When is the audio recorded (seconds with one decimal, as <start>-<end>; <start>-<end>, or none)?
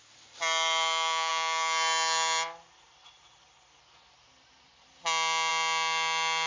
0.0-6.5